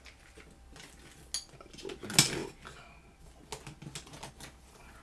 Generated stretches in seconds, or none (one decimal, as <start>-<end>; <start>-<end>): none